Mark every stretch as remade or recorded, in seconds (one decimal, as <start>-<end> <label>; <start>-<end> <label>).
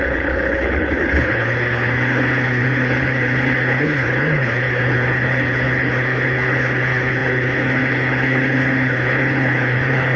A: 0.0-10.2 remade